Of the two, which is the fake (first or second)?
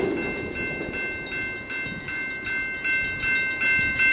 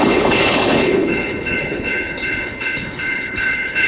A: second